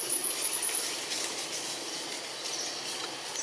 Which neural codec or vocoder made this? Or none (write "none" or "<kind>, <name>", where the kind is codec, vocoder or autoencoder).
none